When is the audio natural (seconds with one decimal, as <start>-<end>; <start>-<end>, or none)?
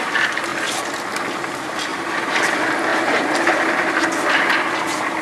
0.0-1.9; 2.5-2.9; 3.9-5.2